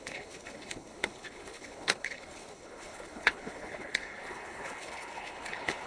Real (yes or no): no